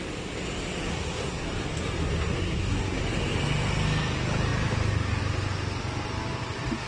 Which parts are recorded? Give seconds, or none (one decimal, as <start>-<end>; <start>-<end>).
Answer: 0.0-0.8; 1.5-2.0; 3.0-6.9